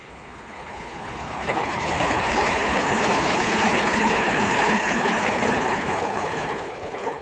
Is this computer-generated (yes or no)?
yes